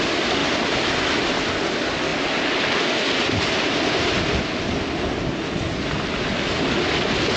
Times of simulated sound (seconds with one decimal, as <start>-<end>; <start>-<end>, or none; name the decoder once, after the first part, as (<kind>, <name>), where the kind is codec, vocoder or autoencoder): none